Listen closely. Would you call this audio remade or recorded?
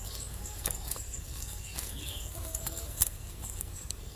remade